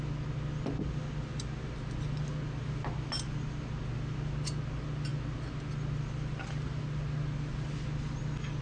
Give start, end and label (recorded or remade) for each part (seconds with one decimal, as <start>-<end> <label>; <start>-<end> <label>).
0.0-8.6 recorded